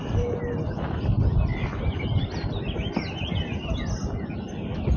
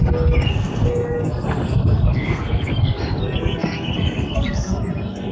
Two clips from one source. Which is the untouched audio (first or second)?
first